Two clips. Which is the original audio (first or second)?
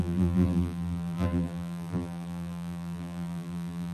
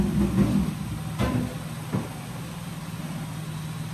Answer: second